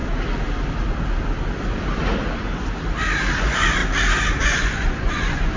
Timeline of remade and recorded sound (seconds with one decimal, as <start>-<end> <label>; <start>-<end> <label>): 0.0-3.4 recorded; 3.4-3.8 remade; 3.8-4.4 recorded; 4.4-5.6 remade